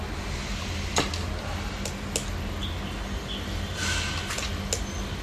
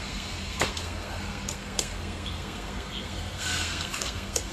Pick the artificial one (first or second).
second